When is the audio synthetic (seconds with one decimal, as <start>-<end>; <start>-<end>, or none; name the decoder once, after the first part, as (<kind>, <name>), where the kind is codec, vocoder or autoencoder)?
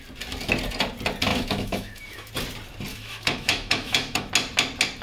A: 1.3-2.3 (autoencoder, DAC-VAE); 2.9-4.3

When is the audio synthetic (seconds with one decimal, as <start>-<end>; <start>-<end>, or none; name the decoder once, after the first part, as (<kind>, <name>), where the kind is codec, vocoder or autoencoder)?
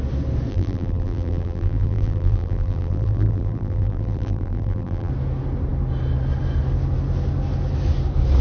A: 0.5-5.1 (vocoder, BigVGAN v2)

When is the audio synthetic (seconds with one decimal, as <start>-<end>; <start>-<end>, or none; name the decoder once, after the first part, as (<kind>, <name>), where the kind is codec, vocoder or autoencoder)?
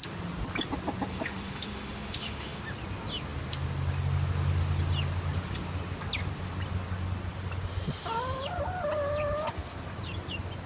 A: 1.1-2.6 (autoencoder, DAC-VAE)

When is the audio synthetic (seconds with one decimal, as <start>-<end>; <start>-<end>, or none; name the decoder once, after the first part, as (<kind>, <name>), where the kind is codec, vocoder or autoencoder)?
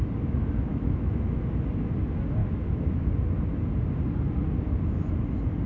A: 0.7-1.4 (autoencoder, DAC-VAE); 2.4-3.1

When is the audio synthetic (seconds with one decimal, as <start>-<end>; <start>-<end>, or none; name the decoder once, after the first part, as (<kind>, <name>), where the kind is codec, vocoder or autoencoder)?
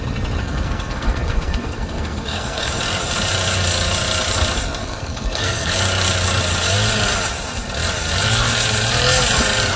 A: 0.4-2.8 (codec, SNAC); 4.8-5.7